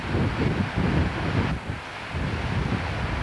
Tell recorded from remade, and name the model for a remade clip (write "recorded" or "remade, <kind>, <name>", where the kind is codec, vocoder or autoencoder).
recorded